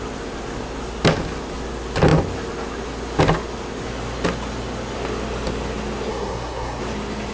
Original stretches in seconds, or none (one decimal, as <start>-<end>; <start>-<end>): 0.0-6.1; 6.8-7.3